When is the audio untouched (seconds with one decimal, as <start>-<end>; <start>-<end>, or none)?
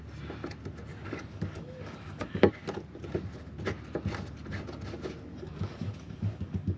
0.0-0.9; 2.5-5.3